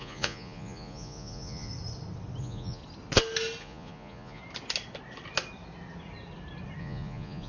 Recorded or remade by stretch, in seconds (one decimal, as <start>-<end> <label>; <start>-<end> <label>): 0.0-1.7 remade; 1.7-2.4 recorded; 2.4-2.8 remade; 2.8-3.6 recorded; 3.6-4.4 remade; 4.4-6.8 recorded; 6.8-7.5 remade

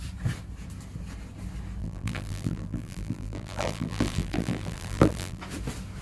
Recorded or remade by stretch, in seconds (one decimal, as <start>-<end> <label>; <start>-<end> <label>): 0.0-1.8 recorded; 1.8-5.4 remade; 5.4-6.0 recorded

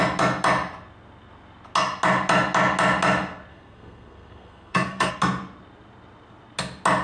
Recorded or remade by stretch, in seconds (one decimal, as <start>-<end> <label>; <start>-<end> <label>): 0.0-3.5 recorded; 3.5-5.1 remade; 5.1-7.0 recorded

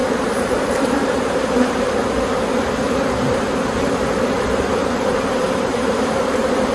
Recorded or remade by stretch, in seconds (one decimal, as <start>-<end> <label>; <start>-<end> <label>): 0.0-1.9 remade; 1.9-4.8 recorded; 4.8-6.7 remade

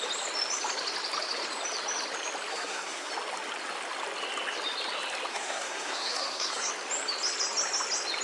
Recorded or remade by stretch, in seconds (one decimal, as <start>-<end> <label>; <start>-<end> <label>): 0.0-2.5 recorded; 2.5-3.1 remade; 3.1-5.3 recorded; 5.3-6.7 remade; 6.7-8.2 recorded

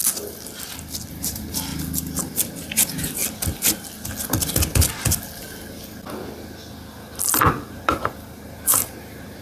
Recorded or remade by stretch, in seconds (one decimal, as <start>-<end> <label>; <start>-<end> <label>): 0.0-1.1 recorded; 1.1-1.7 remade; 1.7-2.2 recorded; 2.2-3.2 remade; 3.2-7.5 recorded; 7.5-9.4 remade

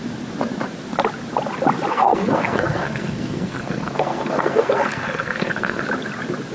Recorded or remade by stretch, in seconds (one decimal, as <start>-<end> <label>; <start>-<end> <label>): 0.0-1.9 recorded; 1.9-5.8 remade; 5.8-6.5 recorded

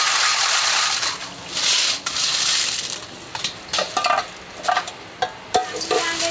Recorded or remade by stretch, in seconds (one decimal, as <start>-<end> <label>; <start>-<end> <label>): 0.0-6.3 recorded